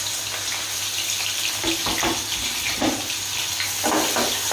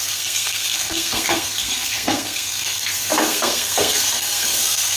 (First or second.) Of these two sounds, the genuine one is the first